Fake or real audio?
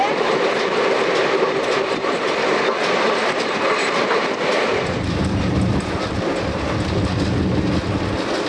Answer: real